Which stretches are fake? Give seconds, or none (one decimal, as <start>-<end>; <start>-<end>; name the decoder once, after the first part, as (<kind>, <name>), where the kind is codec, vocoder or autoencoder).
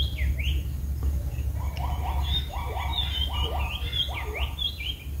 0.0-2.9 (vocoder, BigVGAN v2); 4.7-5.2